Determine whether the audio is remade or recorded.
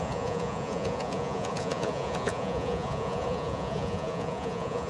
remade